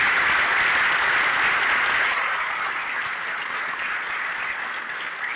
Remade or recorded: recorded